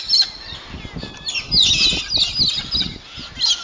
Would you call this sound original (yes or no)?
yes